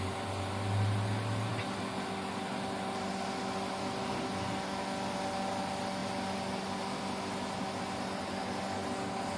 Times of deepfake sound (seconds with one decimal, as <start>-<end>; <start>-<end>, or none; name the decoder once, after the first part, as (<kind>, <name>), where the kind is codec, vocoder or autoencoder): none